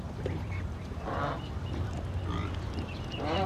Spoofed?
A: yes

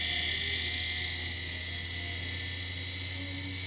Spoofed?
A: no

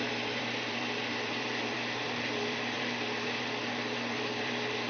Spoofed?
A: yes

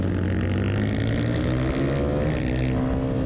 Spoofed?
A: no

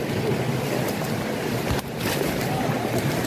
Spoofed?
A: no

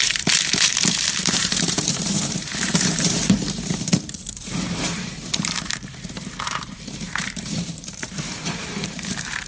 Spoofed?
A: yes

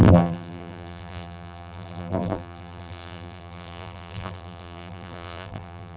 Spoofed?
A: yes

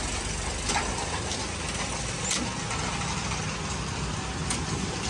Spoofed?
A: no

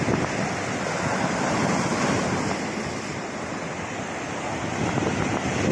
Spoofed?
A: no